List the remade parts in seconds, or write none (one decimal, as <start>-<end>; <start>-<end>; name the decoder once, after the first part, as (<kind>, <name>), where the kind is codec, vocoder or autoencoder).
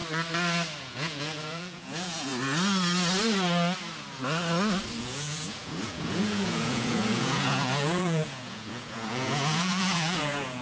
0.8-2.3 (vocoder, Vocos); 5.0-10.6